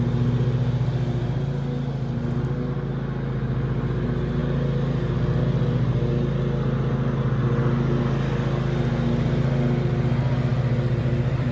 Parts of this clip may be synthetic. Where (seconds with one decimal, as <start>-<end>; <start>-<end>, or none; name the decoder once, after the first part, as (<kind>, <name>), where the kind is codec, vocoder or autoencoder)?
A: 10.5-11.5 (vocoder, BigVGAN v2)